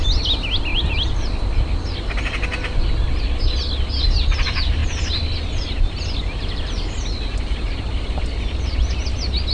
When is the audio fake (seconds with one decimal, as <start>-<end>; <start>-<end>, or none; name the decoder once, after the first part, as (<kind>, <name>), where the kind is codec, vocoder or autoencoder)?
none